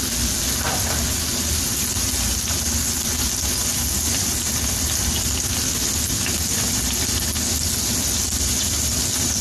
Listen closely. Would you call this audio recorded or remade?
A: recorded